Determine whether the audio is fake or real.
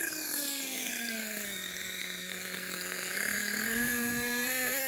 fake